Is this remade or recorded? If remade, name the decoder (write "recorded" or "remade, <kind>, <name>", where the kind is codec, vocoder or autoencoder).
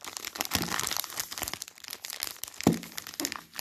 recorded